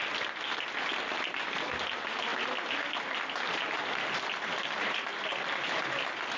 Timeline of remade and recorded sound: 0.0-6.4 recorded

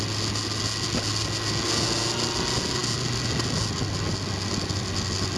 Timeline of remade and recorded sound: 0.0-5.4 recorded

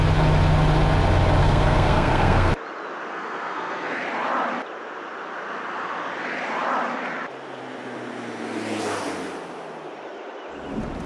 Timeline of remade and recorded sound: 0.0-1.4 recorded; 1.4-2.5 remade; 2.5-3.1 recorded; 3.1-4.0 remade; 4.0-11.1 recorded

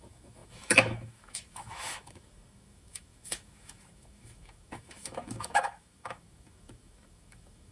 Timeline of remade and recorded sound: 0.0-7.7 remade

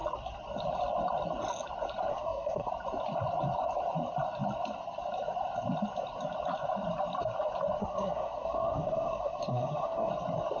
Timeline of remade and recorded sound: 0.0-2.1 recorded; 2.1-2.7 remade; 2.7-7.8 recorded; 7.8-10.1 remade; 10.1-10.6 recorded

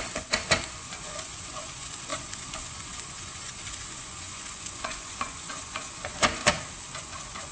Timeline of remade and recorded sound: 0.0-6.4 remade; 6.4-7.0 recorded; 7.0-7.5 remade

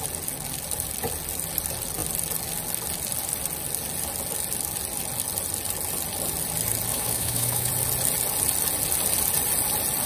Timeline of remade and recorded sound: 0.0-6.9 recorded; 6.9-7.7 remade; 7.7-10.1 recorded

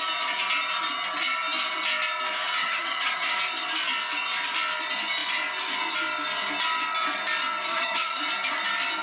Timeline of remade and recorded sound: 0.0-2.6 recorded; 2.6-3.3 remade; 3.3-7.7 recorded; 7.7-8.2 remade; 8.2-9.0 recorded